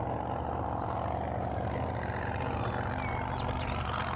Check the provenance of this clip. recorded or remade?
recorded